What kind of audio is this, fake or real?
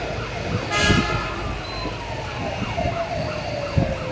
real